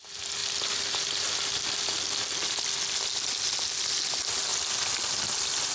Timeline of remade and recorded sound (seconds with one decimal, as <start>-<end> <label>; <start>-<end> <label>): 0.0-5.7 recorded